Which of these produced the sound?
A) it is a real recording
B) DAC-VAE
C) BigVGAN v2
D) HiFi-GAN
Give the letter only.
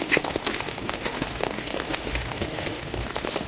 B